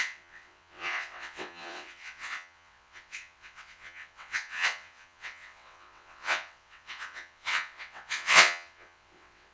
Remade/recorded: remade